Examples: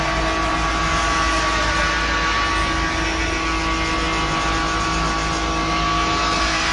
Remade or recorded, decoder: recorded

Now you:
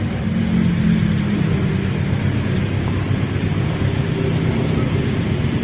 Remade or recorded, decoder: recorded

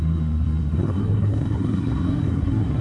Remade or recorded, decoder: remade, codec, SNAC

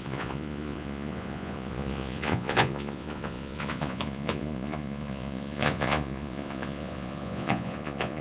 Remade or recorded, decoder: remade, vocoder, Vocos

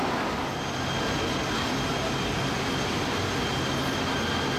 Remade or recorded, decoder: recorded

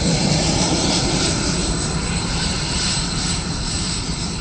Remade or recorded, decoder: remade, vocoder, BigVGAN v2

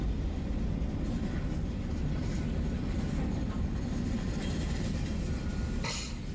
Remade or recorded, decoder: recorded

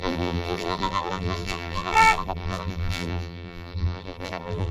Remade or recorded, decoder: remade, vocoder, BigVGAN v2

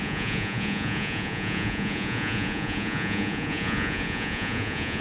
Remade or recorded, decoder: remade, vocoder, Vocos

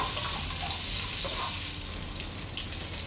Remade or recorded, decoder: recorded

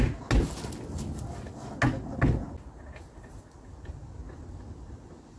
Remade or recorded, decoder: recorded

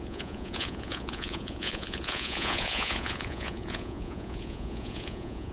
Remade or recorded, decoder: remade, vocoder, Vocos